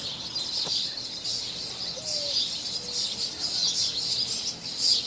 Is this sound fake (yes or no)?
no